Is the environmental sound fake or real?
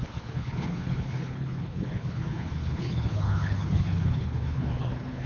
fake